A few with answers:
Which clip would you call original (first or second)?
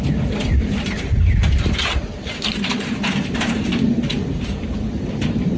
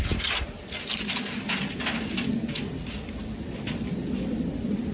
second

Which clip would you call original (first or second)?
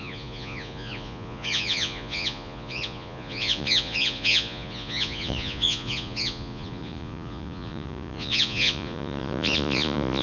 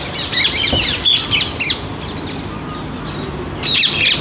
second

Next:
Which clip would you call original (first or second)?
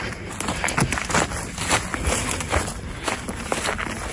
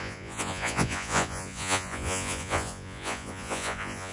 first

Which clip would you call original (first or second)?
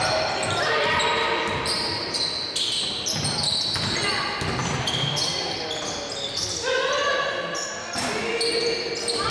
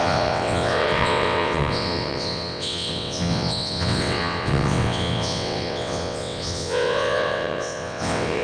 first